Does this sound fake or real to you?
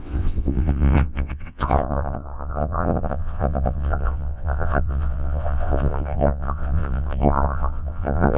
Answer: fake